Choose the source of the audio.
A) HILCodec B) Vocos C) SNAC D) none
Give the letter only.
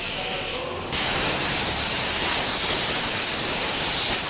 D